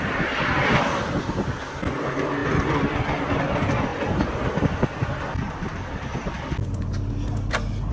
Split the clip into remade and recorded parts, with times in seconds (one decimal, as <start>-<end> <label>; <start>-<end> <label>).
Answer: 0.0-7.9 recorded